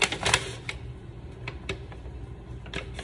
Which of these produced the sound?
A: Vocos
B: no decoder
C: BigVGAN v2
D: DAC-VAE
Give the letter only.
B